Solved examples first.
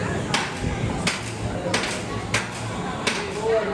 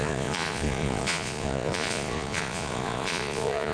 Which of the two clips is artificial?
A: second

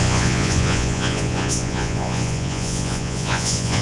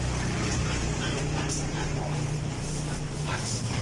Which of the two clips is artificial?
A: first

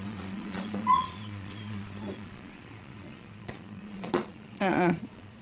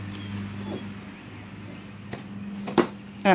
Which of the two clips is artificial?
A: first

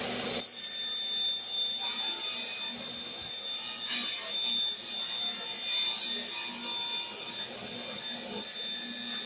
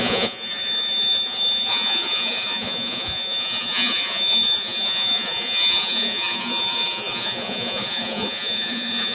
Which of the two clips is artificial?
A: second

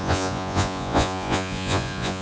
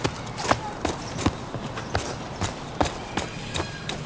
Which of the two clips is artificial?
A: first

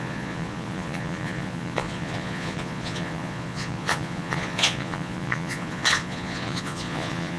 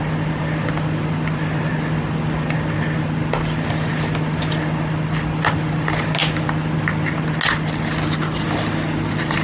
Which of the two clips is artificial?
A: first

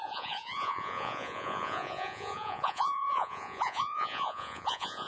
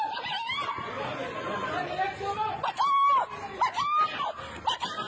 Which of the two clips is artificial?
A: first